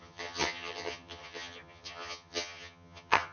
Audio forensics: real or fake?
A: fake